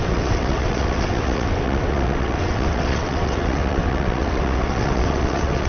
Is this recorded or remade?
remade